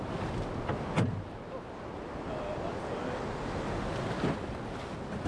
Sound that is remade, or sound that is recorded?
recorded